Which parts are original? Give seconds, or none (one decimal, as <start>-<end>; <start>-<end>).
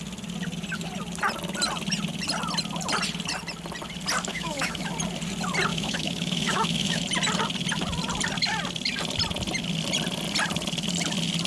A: 0.0-4.3; 4.9-5.7; 7.0-11.5